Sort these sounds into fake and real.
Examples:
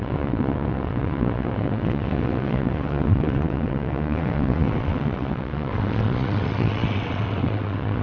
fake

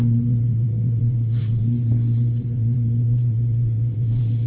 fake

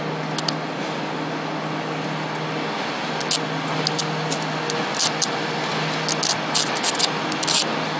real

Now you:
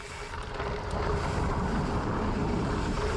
real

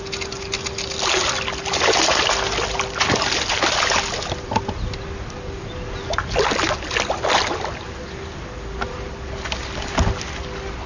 real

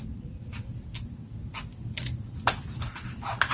real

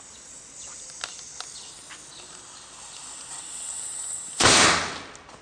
real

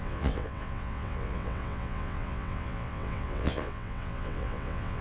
fake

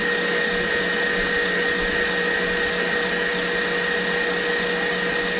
real